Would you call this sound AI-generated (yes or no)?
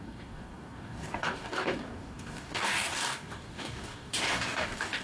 yes